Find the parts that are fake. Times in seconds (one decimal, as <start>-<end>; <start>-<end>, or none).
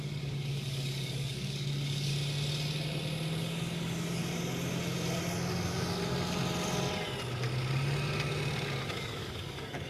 0.0-2.1; 3.4-4.2; 8.9-9.9